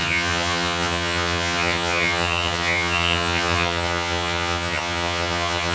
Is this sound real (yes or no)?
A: no